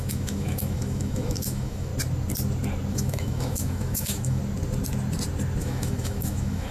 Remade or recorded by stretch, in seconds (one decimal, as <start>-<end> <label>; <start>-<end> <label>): 0.0-1.9 remade; 1.9-2.9 recorded; 2.9-4.4 remade; 4.4-5.6 recorded; 5.6-6.7 remade